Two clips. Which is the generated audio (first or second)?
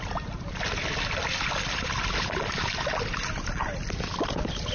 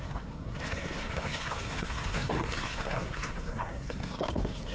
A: second